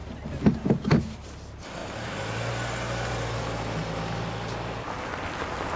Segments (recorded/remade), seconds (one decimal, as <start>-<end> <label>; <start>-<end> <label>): 0.0-5.8 recorded